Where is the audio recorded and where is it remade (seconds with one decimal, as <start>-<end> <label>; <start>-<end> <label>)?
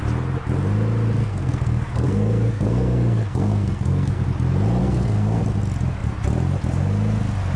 0.0-1.2 recorded; 1.2-4.2 remade; 4.2-4.8 recorded; 4.8-5.4 remade; 5.4-7.6 recorded